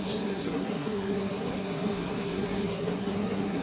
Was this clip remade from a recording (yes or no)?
yes